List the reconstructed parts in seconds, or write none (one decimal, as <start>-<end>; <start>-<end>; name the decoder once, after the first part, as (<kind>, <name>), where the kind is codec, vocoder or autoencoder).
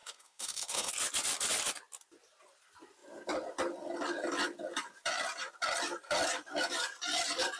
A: 0.0-0.9 (autoencoder, DAC-VAE)